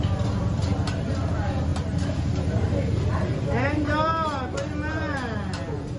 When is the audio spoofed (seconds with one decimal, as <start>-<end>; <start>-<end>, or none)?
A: none